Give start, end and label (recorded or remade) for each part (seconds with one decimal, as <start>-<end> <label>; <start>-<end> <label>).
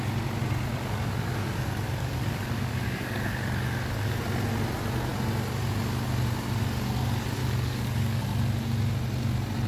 0.0-0.7 recorded; 0.7-4.2 remade; 4.2-7.4 recorded; 7.4-8.2 remade; 8.2-9.7 recorded